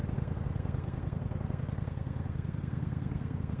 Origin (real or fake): fake